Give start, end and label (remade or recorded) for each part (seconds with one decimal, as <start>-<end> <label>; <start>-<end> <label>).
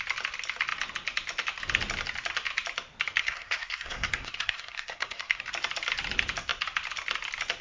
0.0-3.2 recorded; 3.2-5.4 remade; 5.4-7.6 recorded